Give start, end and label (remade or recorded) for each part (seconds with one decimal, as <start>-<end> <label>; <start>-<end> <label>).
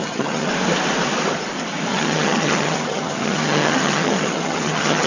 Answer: 0.0-0.5 remade; 0.5-1.9 recorded; 1.9-5.1 remade